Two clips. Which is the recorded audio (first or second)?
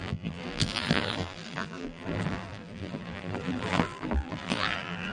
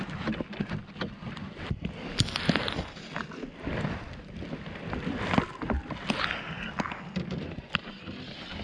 second